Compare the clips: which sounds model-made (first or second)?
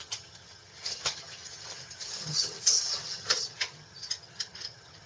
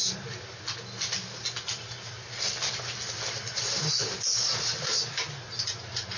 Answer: first